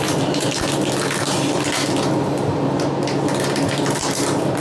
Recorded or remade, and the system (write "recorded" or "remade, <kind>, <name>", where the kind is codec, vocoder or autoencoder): recorded